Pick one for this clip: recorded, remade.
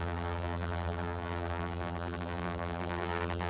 remade